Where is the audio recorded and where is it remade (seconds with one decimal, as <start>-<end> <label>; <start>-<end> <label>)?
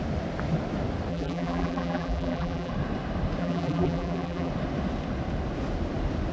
0.0-1.1 recorded; 1.1-2.7 remade; 2.7-3.4 recorded; 3.4-4.5 remade; 4.5-6.3 recorded